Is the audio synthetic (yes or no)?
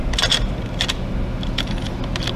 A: no